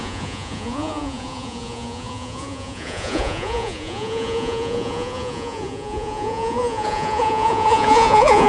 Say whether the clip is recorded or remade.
remade